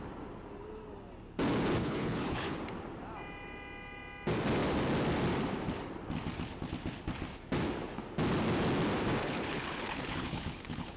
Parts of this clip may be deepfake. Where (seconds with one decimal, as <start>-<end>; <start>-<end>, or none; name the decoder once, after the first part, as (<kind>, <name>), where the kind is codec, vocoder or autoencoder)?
1.8-2.6 (codec, HILCodec); 9.2-11.0

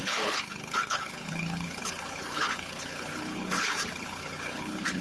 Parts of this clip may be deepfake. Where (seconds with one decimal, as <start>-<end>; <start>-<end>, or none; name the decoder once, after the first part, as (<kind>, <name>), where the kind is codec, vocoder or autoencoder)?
0.0-5.0 (codec, HILCodec)

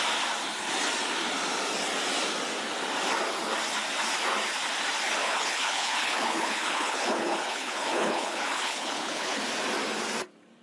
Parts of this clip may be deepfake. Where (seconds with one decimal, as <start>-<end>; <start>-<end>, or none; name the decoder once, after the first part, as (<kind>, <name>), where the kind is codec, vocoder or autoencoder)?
5.2-9.4 (codec, HILCodec)